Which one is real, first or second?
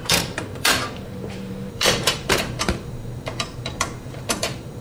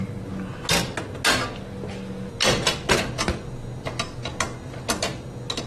second